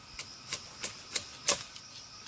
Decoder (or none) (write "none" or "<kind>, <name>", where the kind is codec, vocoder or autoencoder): none